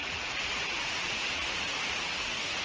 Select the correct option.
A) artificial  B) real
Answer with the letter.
A